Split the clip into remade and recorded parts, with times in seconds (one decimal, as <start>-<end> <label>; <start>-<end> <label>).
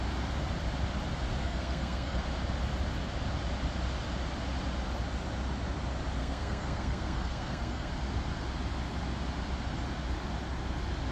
0.0-1.4 recorded; 1.4-2.2 remade; 2.2-6.2 recorded; 6.2-7.9 remade; 7.9-11.1 recorded